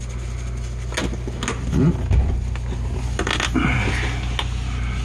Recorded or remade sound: recorded